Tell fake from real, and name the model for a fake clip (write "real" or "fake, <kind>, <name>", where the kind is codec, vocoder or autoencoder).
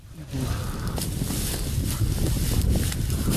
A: fake, vocoder, BigVGAN v2